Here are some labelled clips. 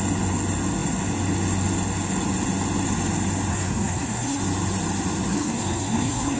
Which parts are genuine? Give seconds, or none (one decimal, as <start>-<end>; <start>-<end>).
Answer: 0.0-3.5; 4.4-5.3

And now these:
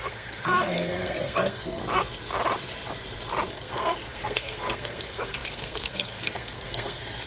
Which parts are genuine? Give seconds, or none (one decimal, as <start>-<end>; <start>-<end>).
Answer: 1.8-3.5

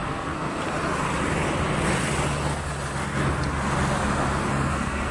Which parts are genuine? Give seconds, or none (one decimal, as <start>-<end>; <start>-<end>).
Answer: 0.6-4.5

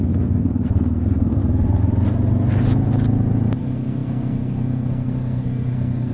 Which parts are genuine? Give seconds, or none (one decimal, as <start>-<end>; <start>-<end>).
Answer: 1.4-3.6

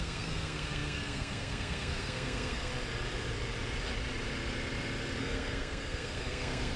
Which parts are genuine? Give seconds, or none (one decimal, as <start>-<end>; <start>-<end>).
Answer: 2.7-5.2

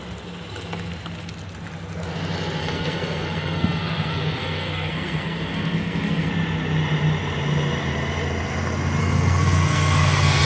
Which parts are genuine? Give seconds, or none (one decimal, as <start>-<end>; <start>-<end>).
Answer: 0.0-2.6; 6.3-9.0

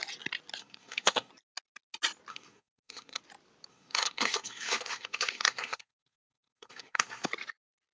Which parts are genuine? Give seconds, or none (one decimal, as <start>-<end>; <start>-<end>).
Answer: 0.0-0.6; 1.3-2.3; 3.2-3.7; 7.3-7.9

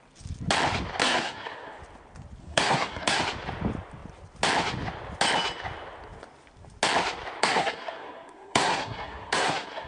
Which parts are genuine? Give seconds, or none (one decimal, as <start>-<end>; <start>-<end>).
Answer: 0.0-1.0; 1.8-2.4; 3.2-7.4